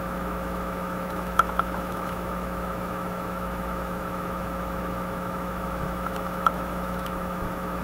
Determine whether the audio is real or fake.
fake